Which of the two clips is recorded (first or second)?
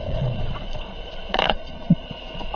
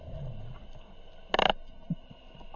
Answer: second